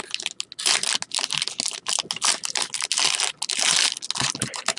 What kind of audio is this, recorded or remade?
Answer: recorded